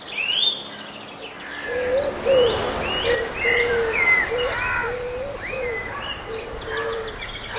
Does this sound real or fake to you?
real